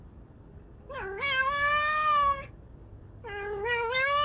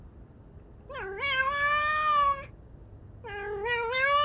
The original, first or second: second